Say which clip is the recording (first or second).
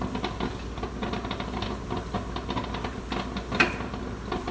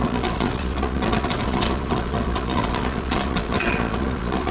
first